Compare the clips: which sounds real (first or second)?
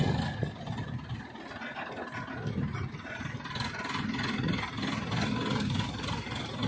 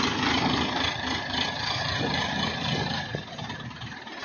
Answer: first